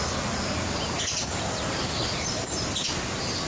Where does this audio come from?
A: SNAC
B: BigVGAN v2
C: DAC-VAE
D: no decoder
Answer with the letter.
D